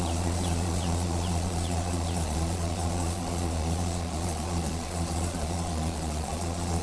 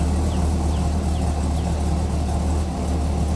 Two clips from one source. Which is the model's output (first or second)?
first